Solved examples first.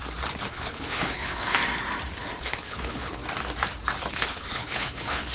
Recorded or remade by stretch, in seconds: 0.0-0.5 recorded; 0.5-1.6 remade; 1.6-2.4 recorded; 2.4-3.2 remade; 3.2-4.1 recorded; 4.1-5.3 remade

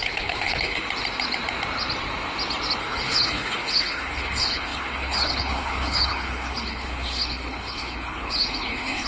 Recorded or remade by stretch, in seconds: 0.0-0.8 remade; 0.8-2.8 recorded; 2.8-9.1 remade

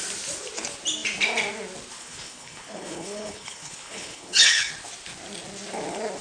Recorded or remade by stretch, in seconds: 0.0-2.0 recorded; 2.0-4.7 remade; 4.7-6.2 recorded

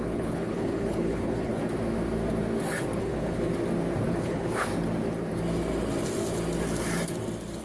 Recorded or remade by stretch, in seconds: 0.0-1.5 remade; 1.5-3.0 recorded; 3.0-3.5 remade; 3.5-4.1 recorded; 4.1-4.7 remade; 4.7-7.6 recorded

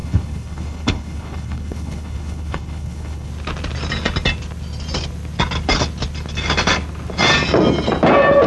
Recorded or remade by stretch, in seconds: 0.0-3.3 remade; 3.3-8.5 recorded

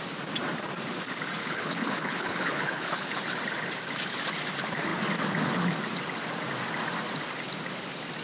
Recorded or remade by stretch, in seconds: 0.0-1.4 recorded; 1.4-3.1 remade; 3.1-8.2 recorded

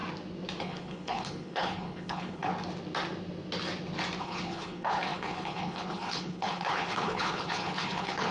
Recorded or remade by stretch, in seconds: 0.0-0.6 recorded; 0.6-2.5 remade; 2.5-4.2 recorded; 4.2-8.3 remade

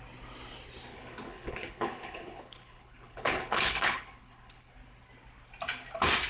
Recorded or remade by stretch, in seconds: 0.0-0.9 recorded; 0.9-4.7 remade; 4.7-6.3 recorded